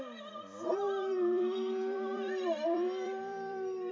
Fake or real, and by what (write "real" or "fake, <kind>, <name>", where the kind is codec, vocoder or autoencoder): fake, vocoder, BigVGAN v2